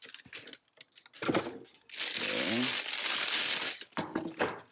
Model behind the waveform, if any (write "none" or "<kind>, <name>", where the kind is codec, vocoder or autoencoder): none